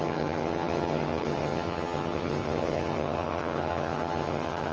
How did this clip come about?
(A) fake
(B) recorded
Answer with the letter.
A